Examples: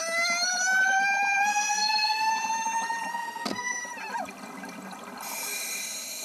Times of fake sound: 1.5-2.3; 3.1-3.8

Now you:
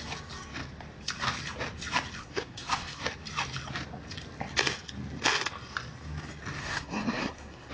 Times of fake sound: 2.2-3.0; 6.6-7.7

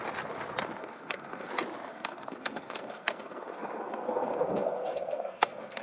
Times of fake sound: 0.8-1.5; 1.9-5.8

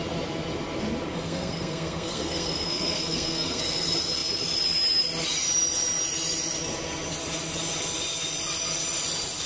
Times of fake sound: 1.1-3.6

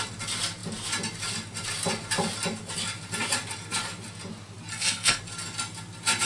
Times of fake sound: 4.7-5.2

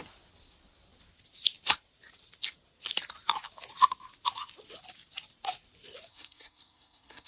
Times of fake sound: 6.1-7.3

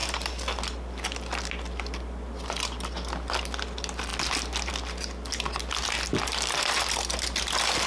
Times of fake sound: none